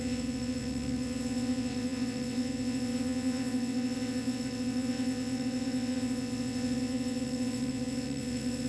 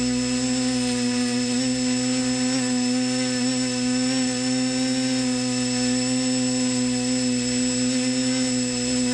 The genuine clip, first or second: second